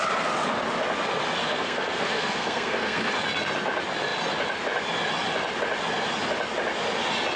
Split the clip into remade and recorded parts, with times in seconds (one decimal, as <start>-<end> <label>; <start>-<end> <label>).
0.0-1.4 recorded; 1.4-3.1 remade; 3.1-7.4 recorded